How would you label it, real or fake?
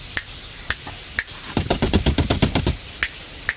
real